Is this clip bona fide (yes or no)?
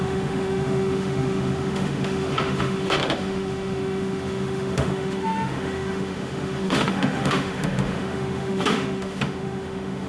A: no